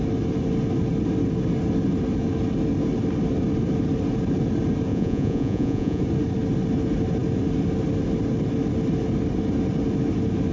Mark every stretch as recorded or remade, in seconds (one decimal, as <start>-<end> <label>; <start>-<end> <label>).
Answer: 0.0-4.9 recorded; 4.9-6.0 remade; 6.0-10.5 recorded